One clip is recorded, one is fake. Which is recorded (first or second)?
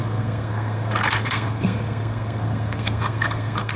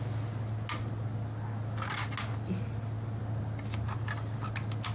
second